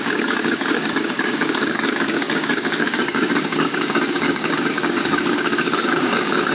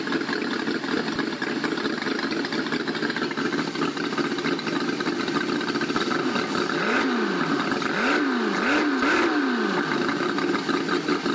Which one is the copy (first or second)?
first